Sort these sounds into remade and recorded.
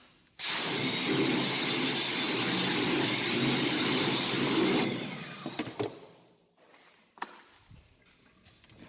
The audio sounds recorded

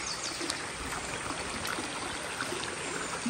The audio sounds recorded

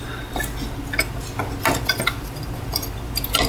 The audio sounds recorded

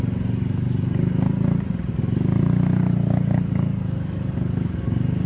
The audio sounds recorded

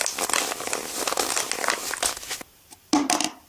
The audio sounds recorded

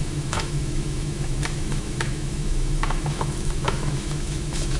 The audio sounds remade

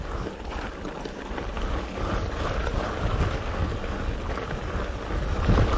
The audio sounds recorded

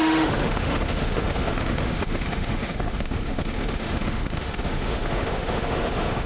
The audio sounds remade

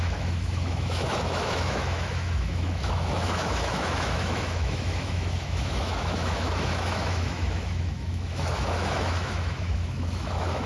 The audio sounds remade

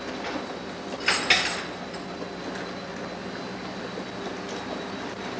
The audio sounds recorded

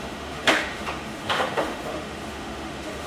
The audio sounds remade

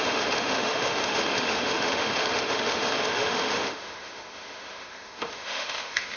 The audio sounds remade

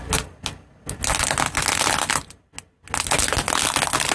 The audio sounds recorded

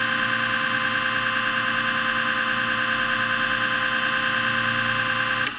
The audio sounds recorded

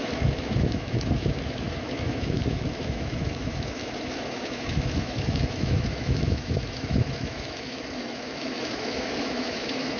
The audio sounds remade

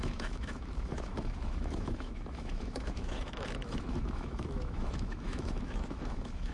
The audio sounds remade